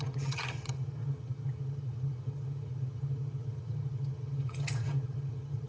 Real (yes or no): no